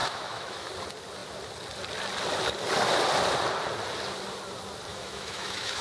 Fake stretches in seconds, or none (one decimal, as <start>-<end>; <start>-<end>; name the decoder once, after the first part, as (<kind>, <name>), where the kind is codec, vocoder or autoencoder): 0.0-0.7 (autoencoder, DAC-VAE); 4.9-5.8